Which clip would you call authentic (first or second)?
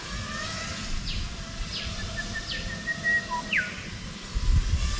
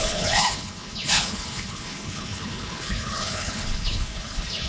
first